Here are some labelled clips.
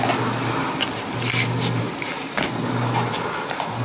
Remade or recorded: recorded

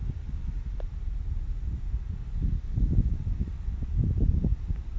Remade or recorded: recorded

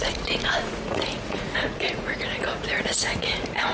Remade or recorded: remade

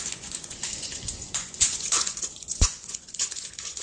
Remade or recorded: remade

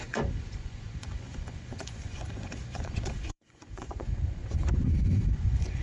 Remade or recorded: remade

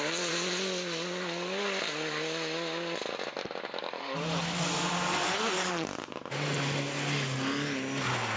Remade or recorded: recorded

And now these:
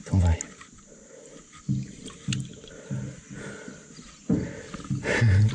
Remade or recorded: recorded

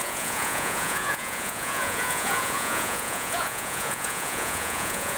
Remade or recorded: remade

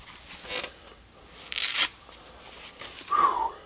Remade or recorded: recorded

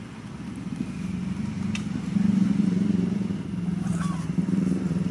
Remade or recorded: recorded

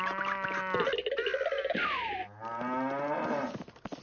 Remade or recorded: recorded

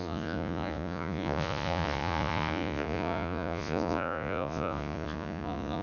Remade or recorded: remade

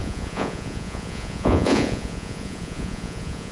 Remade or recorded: remade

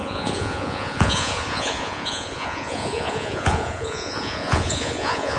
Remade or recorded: remade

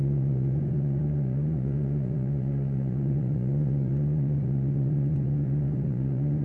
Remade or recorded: remade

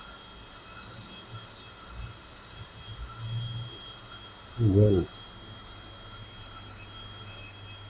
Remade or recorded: recorded